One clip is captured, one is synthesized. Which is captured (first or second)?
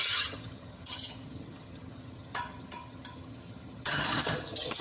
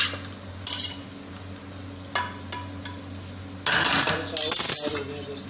second